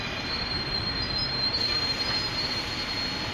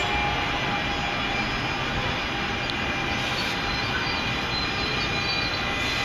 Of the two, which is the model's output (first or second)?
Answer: first